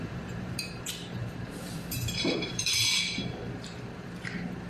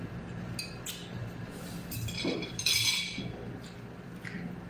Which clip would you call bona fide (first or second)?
second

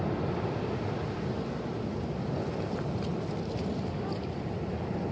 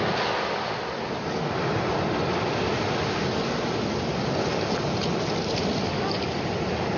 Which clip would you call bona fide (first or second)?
second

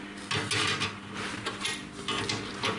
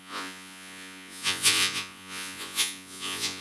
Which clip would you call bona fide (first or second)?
first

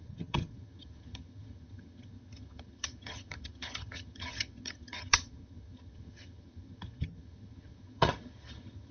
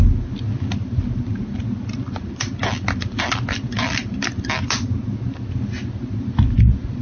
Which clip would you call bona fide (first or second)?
second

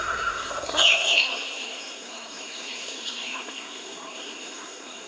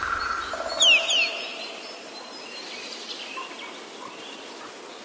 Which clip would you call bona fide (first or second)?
second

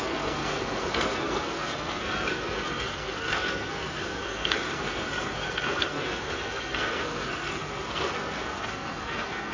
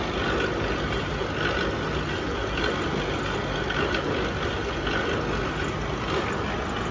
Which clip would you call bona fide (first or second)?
second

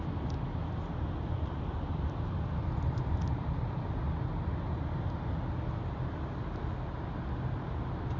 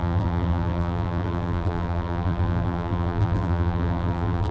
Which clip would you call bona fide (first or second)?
first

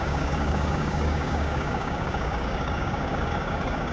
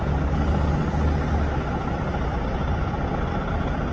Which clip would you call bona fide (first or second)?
second